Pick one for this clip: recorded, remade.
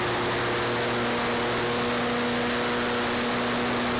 recorded